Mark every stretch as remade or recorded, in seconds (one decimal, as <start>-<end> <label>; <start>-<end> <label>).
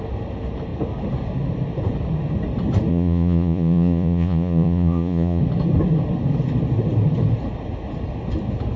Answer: 0.0-2.9 recorded; 2.9-5.4 remade; 5.4-8.8 recorded